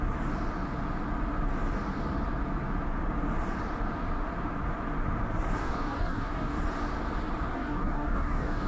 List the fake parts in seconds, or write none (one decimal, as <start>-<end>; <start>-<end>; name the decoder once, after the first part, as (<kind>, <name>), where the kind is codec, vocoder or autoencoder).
5.6-6.6 (codec, DAC); 7.5-8.7